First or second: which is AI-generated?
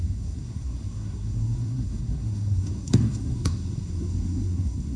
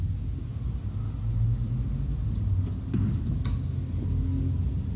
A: first